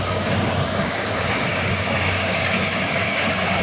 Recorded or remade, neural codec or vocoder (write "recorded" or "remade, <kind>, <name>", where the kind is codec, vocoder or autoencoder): remade, codec, DAC